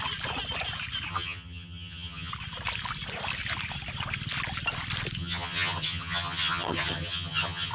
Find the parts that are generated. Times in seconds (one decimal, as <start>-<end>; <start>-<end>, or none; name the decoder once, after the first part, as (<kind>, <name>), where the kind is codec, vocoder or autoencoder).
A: 1.1-2.3 (vocoder, HiFi-GAN); 5.2-7.7